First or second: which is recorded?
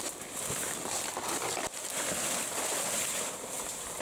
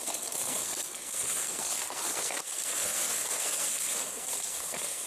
first